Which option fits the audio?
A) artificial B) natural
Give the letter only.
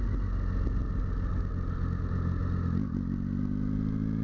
B